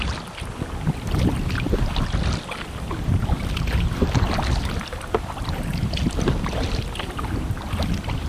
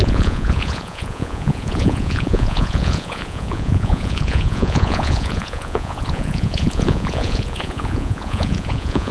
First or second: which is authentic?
first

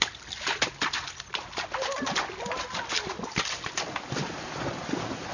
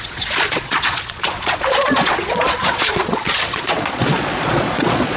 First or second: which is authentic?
first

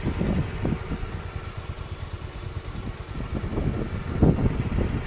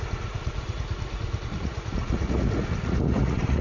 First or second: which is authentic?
first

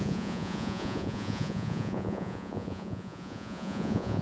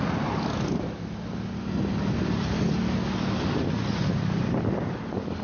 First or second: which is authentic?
second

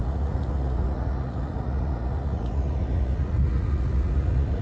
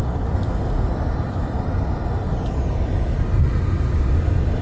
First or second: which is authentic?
second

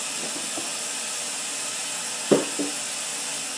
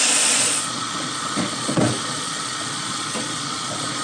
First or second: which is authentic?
first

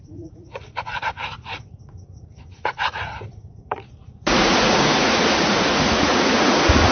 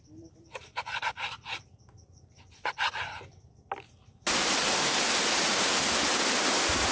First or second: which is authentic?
second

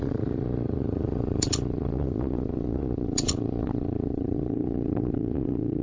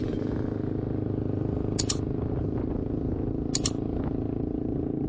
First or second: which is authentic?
second